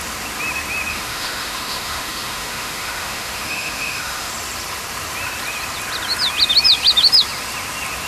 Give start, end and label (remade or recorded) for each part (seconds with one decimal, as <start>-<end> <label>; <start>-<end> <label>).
0.0-0.9 recorded; 0.9-4.3 remade; 4.3-8.1 recorded